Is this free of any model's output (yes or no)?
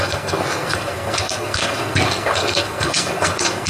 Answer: no